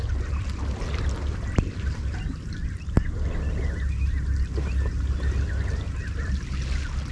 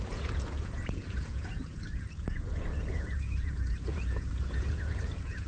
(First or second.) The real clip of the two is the first